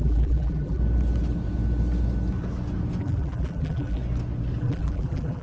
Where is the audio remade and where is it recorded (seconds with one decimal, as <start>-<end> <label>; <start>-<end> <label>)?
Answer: 0.0-0.8 remade; 0.8-3.0 recorded; 3.0-4.0 remade; 4.0-4.6 recorded; 4.6-5.4 remade